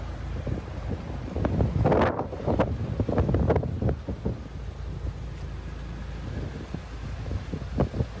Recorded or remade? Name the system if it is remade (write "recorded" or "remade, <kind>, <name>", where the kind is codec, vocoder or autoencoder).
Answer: recorded